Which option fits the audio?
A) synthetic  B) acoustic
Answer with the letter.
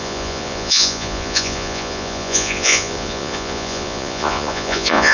A